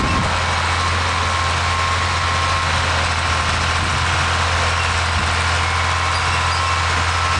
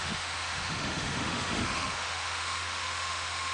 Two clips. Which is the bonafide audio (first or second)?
first